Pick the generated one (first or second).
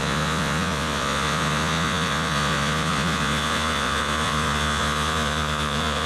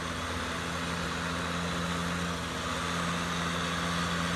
first